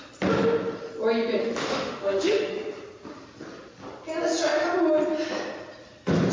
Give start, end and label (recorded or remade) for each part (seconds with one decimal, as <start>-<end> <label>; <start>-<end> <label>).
0.0-1.4 recorded; 1.4-2.5 remade; 2.5-6.3 recorded